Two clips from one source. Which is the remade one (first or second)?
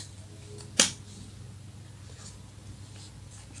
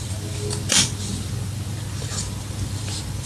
second